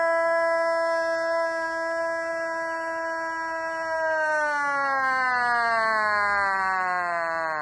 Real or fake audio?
real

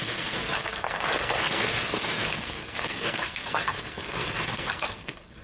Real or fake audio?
fake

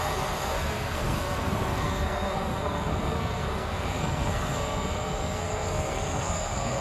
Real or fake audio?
fake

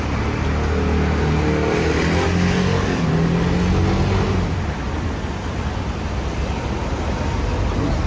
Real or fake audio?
real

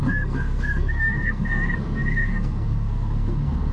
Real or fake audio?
fake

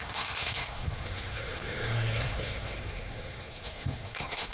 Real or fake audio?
fake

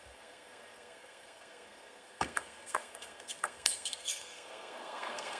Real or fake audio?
fake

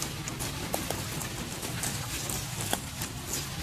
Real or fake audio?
real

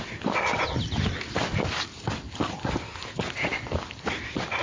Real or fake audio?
real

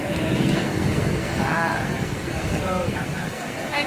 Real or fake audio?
fake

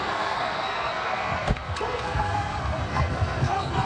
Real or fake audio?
fake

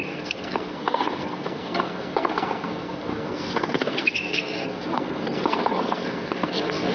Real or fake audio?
fake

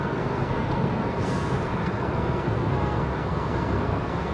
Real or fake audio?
fake